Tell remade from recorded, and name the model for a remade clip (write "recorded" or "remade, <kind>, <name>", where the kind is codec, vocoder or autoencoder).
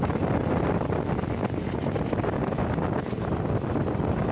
recorded